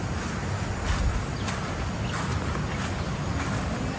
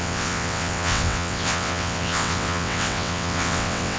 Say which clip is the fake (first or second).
second